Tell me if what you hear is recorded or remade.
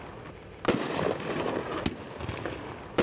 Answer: recorded